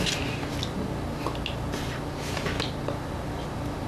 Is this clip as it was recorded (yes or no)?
yes